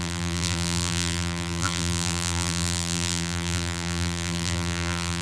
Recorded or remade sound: remade